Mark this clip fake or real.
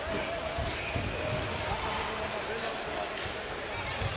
real